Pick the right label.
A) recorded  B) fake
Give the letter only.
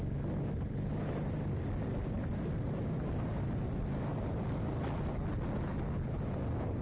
A